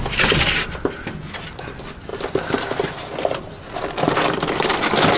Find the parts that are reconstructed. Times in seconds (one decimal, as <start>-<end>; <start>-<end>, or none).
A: none